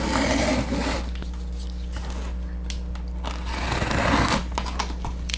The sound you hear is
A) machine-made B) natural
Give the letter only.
B